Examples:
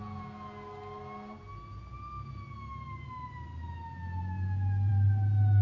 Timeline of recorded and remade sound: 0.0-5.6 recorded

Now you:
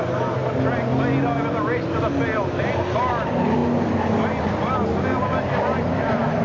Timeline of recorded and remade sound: 0.0-6.4 recorded

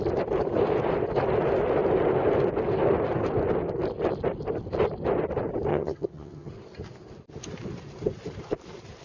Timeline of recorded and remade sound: 0.0-5.7 recorded; 5.7-6.5 remade; 6.5-9.0 recorded

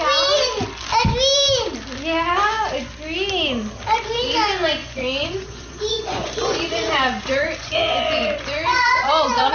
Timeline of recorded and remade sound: 0.0-4.8 recorded; 4.8-9.5 remade

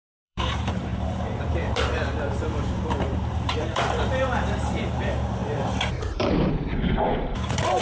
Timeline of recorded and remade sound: 0.0-7.8 remade

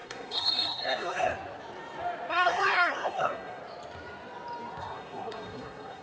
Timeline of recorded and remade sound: 0.0-1.3 remade; 1.3-2.3 recorded; 2.3-3.6 remade; 3.6-4.8 recorded; 4.8-6.0 remade